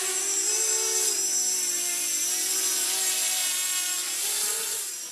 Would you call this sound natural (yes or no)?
yes